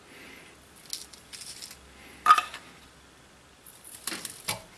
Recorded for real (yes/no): yes